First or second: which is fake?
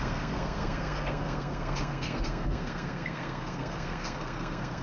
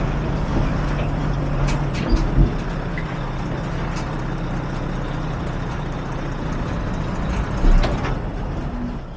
first